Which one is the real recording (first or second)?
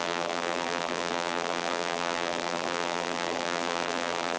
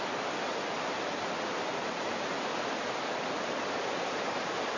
second